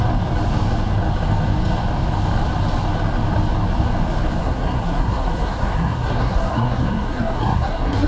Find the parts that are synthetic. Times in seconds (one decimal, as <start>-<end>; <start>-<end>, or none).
4.4-8.1